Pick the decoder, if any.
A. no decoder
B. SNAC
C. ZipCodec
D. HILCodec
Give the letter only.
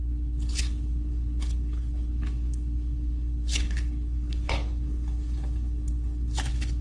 D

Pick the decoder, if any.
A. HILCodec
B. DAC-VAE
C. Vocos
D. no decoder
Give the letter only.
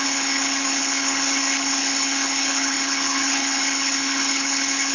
A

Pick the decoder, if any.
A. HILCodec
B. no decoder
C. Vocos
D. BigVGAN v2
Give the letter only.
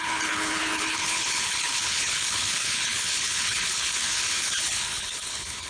A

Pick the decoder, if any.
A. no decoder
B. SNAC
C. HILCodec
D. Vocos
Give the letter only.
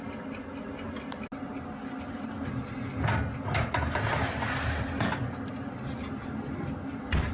A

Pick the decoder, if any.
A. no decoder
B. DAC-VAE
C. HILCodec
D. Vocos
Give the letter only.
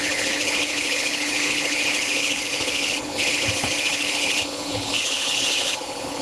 C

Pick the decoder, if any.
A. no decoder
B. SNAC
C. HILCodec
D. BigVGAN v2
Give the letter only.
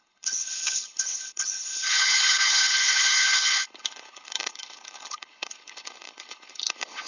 C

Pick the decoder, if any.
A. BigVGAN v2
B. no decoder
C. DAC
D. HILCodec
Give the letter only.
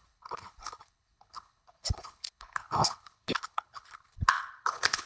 D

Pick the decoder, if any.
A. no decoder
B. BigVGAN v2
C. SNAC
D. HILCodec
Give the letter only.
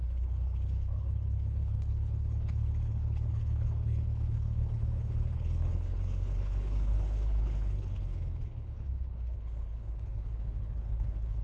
D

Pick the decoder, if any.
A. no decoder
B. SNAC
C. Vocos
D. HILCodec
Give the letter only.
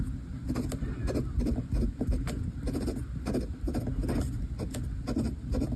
A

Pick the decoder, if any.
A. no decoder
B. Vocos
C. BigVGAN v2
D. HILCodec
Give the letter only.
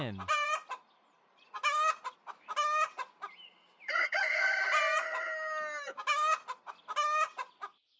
A